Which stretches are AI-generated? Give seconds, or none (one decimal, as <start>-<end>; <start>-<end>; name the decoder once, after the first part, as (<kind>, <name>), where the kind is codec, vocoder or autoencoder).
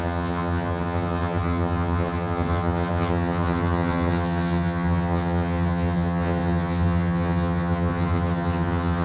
0.0-9.0 (vocoder, HiFi-GAN)